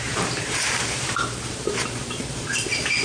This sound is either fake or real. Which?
fake